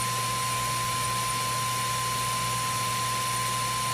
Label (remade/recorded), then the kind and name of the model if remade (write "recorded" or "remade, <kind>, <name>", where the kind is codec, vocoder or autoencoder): recorded